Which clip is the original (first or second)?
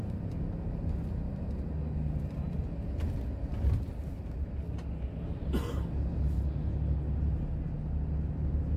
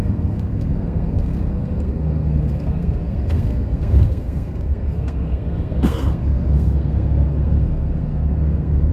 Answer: first